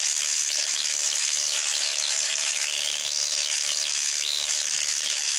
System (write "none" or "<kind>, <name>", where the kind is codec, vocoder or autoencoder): autoencoder, DAC-VAE